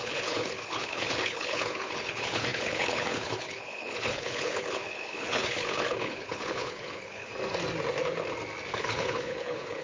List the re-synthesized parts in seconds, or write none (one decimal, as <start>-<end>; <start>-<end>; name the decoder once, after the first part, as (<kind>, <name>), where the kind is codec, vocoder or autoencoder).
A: 0.0-7.3 (codec, HILCodec); 8.7-9.8